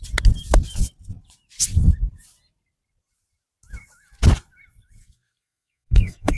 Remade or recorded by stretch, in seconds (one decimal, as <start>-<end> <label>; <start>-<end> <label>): 0.0-5.0 recorded; 5.0-6.4 remade